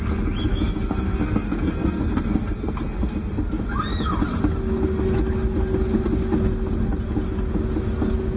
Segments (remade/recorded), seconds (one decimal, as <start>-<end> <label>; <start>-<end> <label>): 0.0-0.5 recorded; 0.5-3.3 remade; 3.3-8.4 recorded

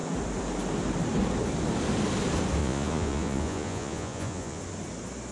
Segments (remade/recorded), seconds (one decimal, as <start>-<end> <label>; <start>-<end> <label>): 0.0-2.6 recorded; 2.6-4.6 remade; 4.6-5.3 recorded

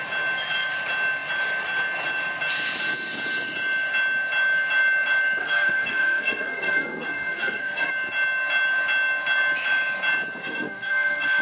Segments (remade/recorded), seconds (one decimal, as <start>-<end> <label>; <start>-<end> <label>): 0.0-5.4 recorded; 5.4-7.9 remade; 7.9-10.4 recorded; 10.4-11.4 remade

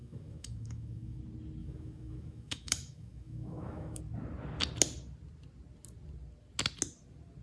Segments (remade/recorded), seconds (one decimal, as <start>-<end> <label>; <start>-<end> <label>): 0.0-1.2 remade; 1.2-1.6 recorded; 1.6-4.0 remade; 4.0-7.4 recorded